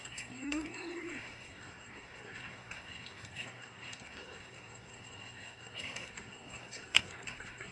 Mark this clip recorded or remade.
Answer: remade